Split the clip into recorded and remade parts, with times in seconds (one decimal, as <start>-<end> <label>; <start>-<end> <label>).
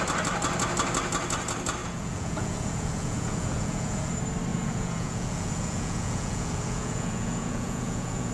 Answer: 0.0-1.8 recorded; 1.8-4.1 remade; 4.1-4.5 recorded; 4.5-8.3 remade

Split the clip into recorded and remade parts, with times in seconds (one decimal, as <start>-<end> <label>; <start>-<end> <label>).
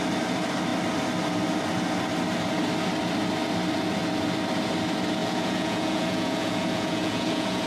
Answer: 0.0-5.2 recorded; 5.2-7.7 remade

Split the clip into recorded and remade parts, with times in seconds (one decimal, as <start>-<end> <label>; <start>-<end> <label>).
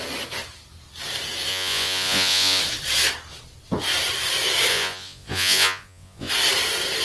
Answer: 0.0-1.5 recorded; 1.5-2.6 remade; 2.6-4.7 recorded; 4.7-6.3 remade; 6.3-7.0 recorded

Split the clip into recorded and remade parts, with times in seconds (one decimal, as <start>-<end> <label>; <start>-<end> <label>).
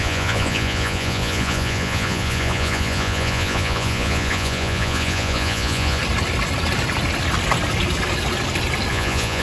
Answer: 0.0-6.0 remade; 6.0-8.9 recorded; 8.9-9.4 remade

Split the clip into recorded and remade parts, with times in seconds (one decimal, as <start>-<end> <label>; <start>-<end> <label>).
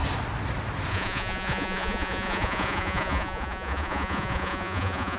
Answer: 0.0-0.9 recorded; 0.9-5.2 remade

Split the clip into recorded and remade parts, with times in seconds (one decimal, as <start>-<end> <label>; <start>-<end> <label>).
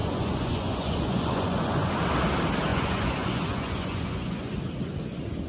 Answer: 0.0-1.9 remade; 1.9-2.7 recorded; 2.7-4.5 remade; 4.5-5.5 recorded